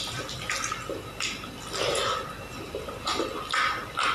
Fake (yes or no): no